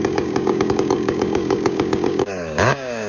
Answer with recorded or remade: remade